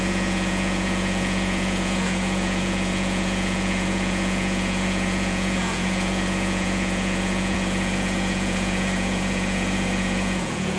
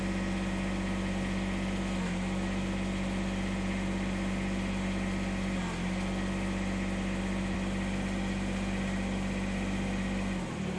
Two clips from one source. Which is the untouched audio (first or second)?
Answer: second